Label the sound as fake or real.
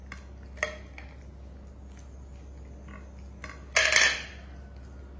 real